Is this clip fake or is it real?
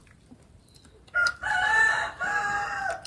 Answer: fake